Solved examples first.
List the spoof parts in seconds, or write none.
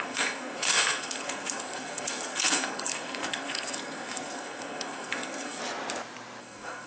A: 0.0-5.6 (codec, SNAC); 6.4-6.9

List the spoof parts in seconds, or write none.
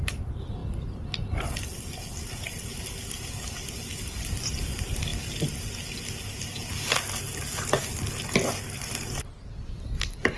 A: none